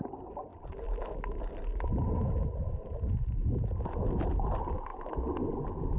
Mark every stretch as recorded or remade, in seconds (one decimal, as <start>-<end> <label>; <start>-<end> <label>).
0.0-6.0 recorded